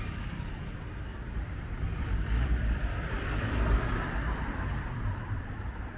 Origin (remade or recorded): remade